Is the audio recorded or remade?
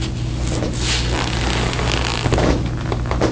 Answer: recorded